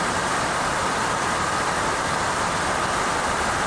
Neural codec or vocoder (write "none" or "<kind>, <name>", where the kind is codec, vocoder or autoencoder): none